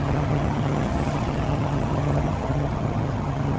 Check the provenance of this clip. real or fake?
fake